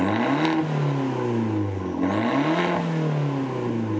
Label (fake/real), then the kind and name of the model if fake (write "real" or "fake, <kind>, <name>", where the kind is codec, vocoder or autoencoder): real